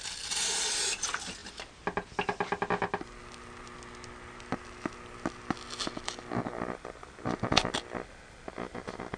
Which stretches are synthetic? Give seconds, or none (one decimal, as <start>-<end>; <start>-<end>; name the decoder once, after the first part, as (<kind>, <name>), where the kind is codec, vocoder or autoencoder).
none